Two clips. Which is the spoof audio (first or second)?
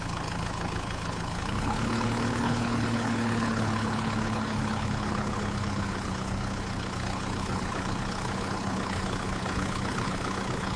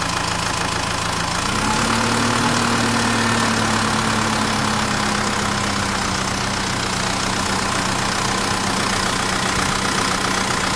first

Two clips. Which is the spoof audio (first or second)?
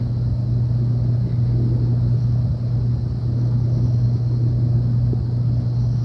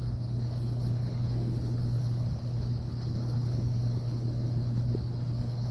second